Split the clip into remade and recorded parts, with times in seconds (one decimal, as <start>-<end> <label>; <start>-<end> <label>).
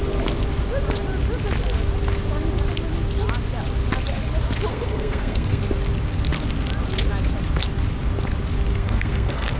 0.0-4.7 recorded; 4.7-5.6 remade; 5.6-8.7 recorded; 8.7-9.6 remade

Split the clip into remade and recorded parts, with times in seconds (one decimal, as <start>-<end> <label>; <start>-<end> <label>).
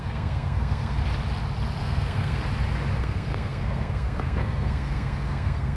0.0-1.0 remade; 1.0-1.8 recorded; 1.8-2.4 remade; 2.4-3.0 recorded; 3.0-5.8 remade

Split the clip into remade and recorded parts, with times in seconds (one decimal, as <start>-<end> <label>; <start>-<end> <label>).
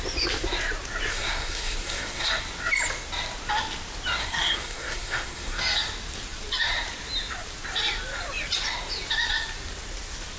0.0-1.1 recorded; 1.1-2.3 remade; 2.3-4.2 recorded; 4.2-5.6 remade; 5.6-10.4 recorded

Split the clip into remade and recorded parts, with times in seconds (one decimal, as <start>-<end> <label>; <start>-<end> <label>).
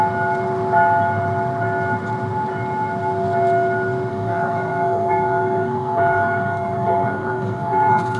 0.0-4.1 recorded; 4.1-8.2 remade